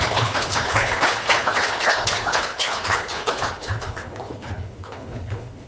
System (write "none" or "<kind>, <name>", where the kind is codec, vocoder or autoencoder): codec, HILCodec